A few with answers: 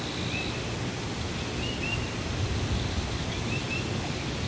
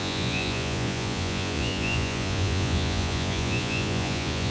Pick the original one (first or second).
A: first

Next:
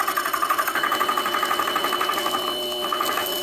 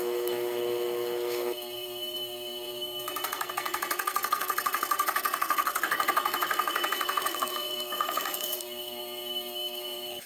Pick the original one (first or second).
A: first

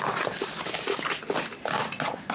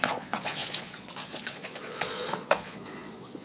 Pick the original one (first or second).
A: first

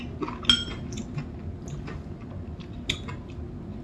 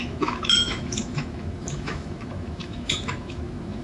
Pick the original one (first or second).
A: first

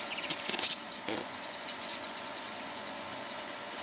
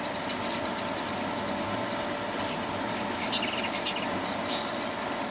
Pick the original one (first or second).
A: second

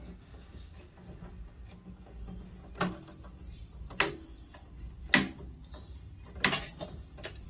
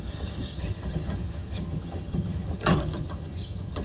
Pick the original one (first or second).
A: first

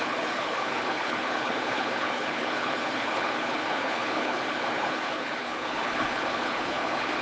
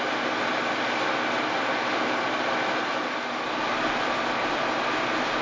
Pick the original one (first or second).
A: second